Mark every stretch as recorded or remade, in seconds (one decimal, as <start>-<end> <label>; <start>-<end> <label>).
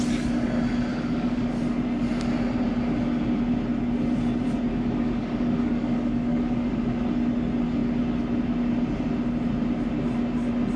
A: 0.0-0.9 recorded; 0.9-1.6 remade; 1.6-4.7 recorded; 4.7-6.7 remade; 6.7-10.8 recorded